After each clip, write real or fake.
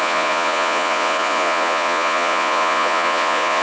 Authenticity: fake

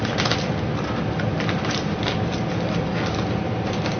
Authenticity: real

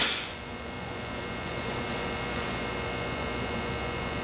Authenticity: fake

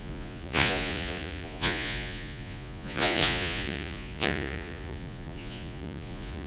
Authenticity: fake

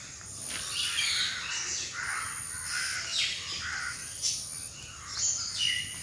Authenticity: real